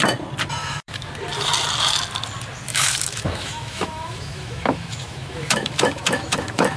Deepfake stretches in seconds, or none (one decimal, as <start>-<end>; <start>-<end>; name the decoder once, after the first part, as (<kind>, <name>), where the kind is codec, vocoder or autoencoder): 0.6-1.1 (autoencoder, DAC-VAE); 2.7-6.8